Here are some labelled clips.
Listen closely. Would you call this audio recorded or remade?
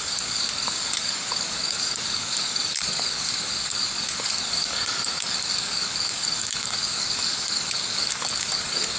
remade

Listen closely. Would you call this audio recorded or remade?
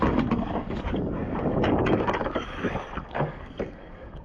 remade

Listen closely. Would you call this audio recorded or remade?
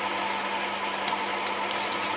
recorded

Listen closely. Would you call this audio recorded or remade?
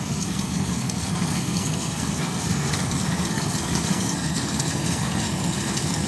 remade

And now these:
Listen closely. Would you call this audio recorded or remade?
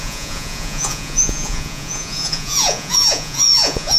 remade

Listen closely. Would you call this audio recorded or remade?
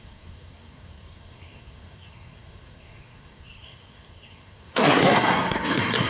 remade